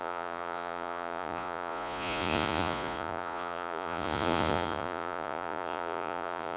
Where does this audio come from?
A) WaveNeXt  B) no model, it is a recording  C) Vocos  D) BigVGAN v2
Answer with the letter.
C